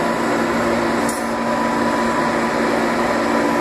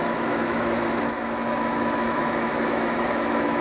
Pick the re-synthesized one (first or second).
second